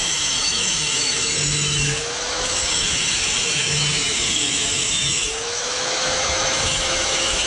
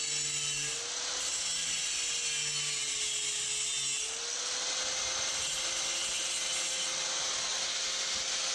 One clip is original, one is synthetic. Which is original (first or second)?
second